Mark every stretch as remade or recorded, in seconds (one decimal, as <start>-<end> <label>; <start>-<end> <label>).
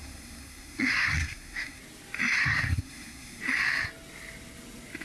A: 0.0-1.8 remade; 1.8-2.4 recorded; 2.4-3.4 remade; 3.4-5.0 recorded